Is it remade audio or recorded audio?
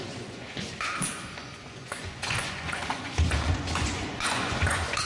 remade